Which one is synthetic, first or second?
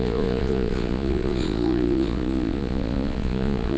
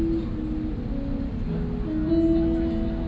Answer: first